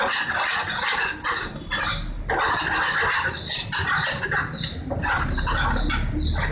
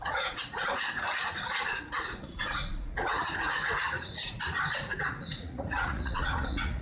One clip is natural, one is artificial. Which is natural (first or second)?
first